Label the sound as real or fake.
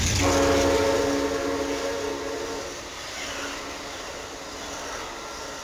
real